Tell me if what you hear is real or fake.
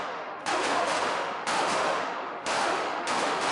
fake